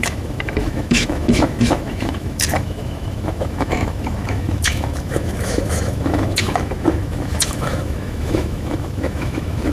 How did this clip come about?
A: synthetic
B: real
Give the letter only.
A